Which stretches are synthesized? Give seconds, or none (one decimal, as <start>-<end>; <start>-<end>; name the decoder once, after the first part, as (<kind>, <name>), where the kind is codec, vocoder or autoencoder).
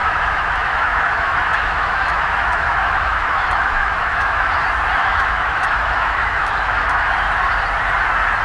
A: 0.0-4.6 (autoencoder, DAC-VAE); 5.0-7.1